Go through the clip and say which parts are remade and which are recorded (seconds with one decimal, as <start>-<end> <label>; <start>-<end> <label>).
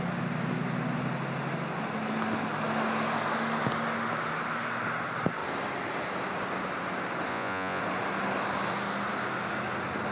0.0-7.3 recorded; 7.3-7.8 remade; 7.8-10.1 recorded